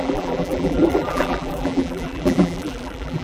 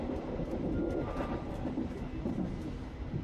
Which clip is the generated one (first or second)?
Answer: first